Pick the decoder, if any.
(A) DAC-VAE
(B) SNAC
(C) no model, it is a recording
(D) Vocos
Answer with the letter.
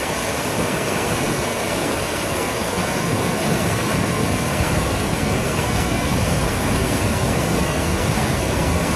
B